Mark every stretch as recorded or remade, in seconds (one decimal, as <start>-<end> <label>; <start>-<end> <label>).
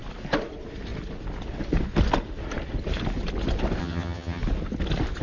0.0-3.8 recorded; 3.8-4.4 remade; 4.4-5.2 recorded